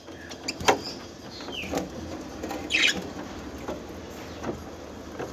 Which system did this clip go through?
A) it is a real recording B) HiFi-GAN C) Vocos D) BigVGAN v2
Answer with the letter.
A